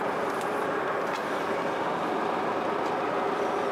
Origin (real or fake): real